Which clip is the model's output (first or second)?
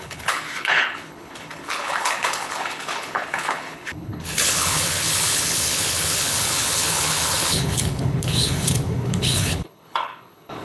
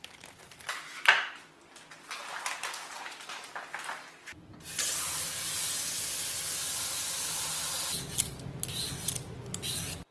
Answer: first